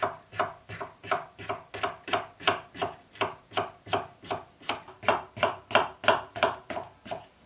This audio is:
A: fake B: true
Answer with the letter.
B